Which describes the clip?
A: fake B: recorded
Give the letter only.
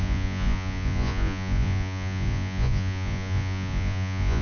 A